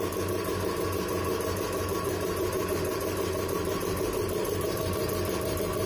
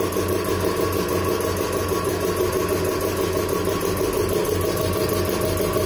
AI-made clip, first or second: first